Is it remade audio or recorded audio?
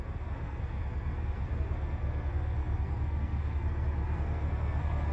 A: remade